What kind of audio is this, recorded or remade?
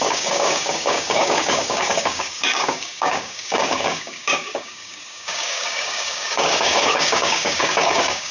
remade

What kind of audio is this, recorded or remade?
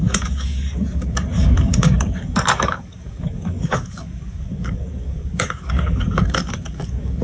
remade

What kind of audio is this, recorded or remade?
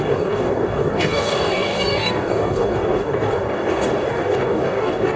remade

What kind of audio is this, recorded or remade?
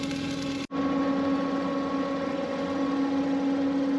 recorded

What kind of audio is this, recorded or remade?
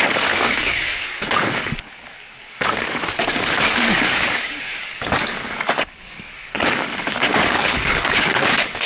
remade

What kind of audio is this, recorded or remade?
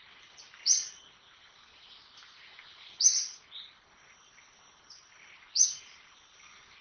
recorded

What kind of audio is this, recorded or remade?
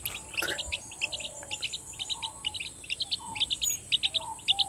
recorded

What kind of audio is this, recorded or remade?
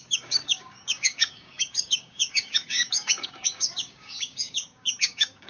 remade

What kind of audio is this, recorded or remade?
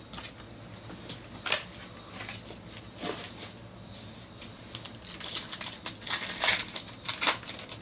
recorded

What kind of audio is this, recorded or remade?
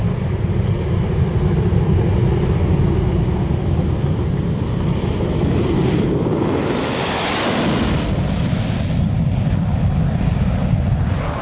recorded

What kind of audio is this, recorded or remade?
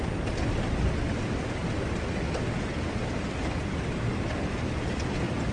recorded